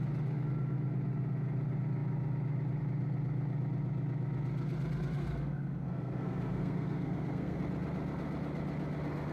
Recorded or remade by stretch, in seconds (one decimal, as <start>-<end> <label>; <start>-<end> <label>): 0.0-5.2 recorded; 5.2-7.6 remade; 7.6-9.3 recorded